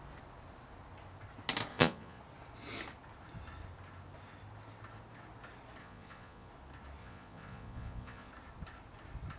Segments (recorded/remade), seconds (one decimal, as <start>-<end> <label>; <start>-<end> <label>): 0.0-1.7 recorded; 1.7-2.2 remade; 2.2-5.8 recorded; 5.8-6.5 remade; 6.5-7.0 recorded; 7.0-8.3 remade; 8.3-9.4 recorded